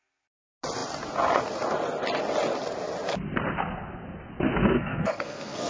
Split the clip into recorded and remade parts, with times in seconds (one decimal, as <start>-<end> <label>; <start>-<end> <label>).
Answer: 0.0-4.6 recorded; 4.6-5.7 remade

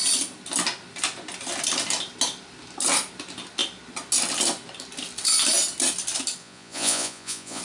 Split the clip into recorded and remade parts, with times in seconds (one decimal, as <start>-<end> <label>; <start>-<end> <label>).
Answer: 0.0-6.4 recorded; 6.4-7.6 remade

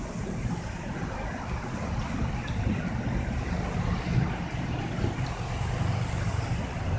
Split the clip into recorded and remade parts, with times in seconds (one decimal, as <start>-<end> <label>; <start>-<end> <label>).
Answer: 0.0-7.0 recorded

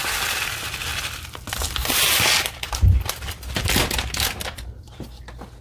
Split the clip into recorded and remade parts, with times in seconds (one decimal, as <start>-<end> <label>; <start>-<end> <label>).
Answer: 0.0-5.6 recorded

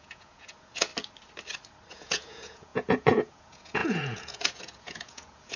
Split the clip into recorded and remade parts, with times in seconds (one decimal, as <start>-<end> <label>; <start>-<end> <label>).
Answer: 0.0-0.9 remade; 0.9-1.9 recorded; 1.9-5.6 remade

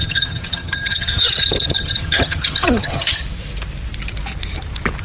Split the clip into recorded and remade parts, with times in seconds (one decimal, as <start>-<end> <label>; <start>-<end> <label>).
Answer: 0.0-3.2 remade; 3.2-5.0 recorded

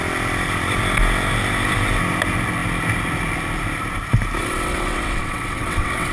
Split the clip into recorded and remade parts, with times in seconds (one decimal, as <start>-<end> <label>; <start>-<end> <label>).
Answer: 0.0-4.4 recorded; 4.4-6.1 remade